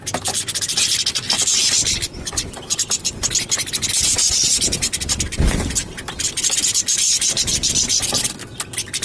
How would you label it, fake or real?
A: real